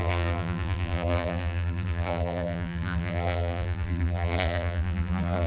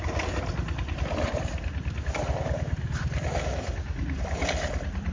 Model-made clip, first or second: first